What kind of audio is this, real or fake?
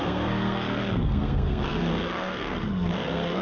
fake